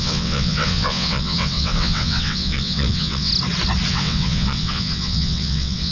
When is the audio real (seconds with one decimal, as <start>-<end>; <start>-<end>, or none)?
3.3-3.9